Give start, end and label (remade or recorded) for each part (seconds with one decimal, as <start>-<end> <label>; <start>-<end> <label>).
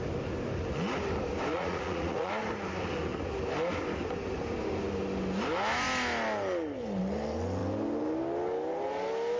0.0-1.5 recorded; 1.5-2.3 remade; 2.3-9.4 recorded